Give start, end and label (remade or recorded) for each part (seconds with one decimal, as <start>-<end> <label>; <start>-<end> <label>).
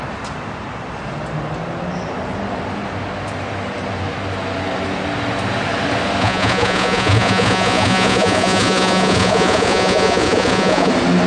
0.0-6.2 recorded; 6.2-10.9 remade; 10.9-11.3 recorded